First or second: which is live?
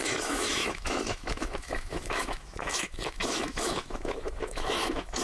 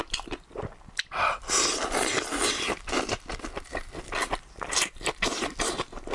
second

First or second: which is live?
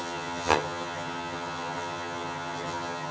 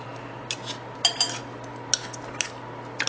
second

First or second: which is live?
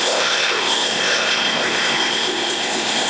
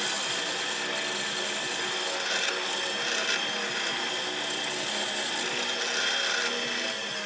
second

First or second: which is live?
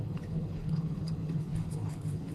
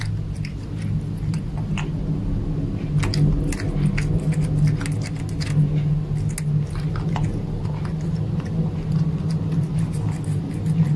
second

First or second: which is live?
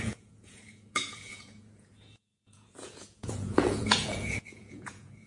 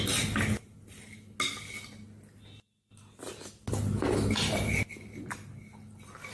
second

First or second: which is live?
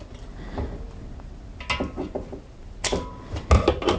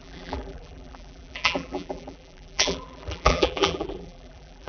first